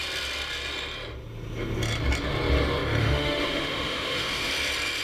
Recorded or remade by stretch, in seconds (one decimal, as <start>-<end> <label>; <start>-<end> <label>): 0.0-3.0 recorded; 3.0-4.5 remade; 4.5-5.0 recorded